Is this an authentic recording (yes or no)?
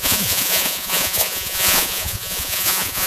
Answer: no